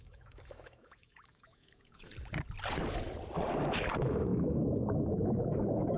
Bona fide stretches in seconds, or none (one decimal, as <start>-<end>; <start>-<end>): 2.1-3.7

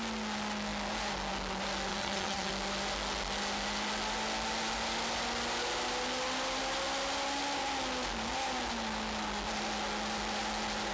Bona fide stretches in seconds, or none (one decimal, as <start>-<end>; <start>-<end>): 0.0-1.9; 2.5-10.9